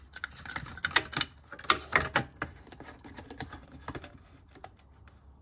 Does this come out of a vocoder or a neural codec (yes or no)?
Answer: no